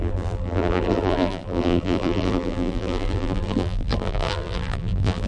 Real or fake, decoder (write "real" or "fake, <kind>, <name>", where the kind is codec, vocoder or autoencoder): fake, vocoder, BigVGAN v2